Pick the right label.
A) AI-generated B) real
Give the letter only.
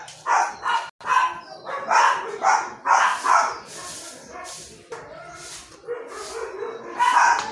B